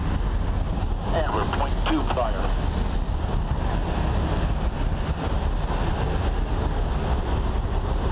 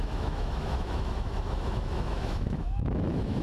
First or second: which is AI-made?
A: second